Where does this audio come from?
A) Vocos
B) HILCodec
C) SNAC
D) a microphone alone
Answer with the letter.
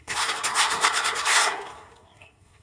C